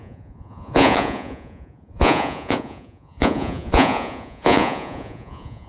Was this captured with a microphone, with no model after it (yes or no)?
no